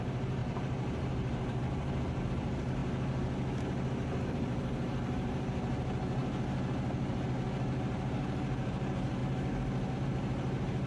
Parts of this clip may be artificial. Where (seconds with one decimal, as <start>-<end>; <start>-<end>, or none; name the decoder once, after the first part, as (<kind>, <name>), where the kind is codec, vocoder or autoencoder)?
0.0-2.8 (vocoder, BigVGAN v2); 4.3-6.2; 7.1-9.2; 9.9-10.9